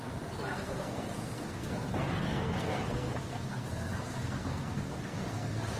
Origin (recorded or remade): remade